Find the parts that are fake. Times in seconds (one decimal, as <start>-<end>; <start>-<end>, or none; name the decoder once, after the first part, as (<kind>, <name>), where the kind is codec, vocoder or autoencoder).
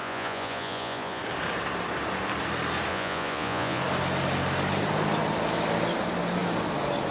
0.0-1.2 (vocoder, Vocos); 2.9-3.8